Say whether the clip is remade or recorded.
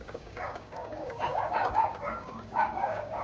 remade